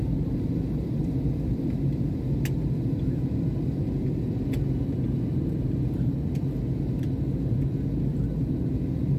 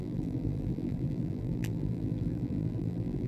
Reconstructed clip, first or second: second